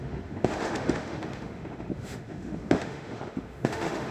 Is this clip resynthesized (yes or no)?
yes